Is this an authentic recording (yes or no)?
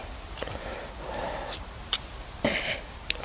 no